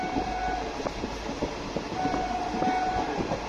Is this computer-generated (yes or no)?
no